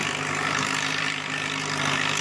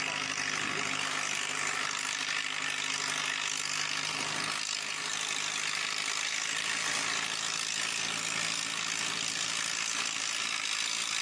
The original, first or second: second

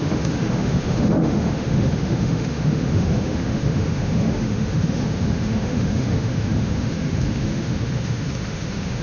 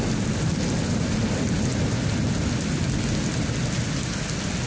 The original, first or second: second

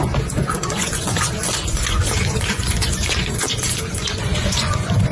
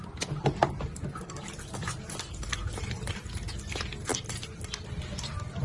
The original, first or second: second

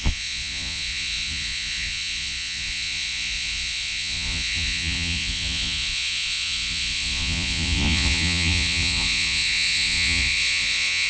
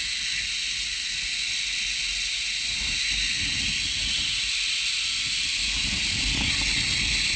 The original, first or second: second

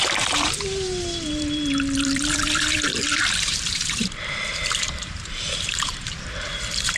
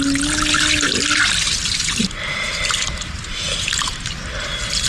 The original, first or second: second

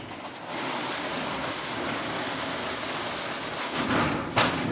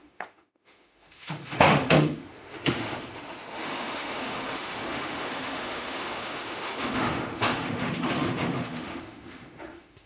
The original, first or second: first